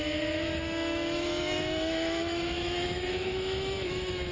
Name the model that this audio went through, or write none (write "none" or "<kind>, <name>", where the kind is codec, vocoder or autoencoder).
autoencoder, DAC-VAE